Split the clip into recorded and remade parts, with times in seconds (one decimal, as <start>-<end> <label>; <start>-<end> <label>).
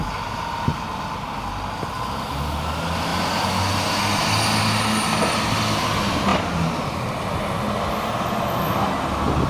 0.0-9.5 recorded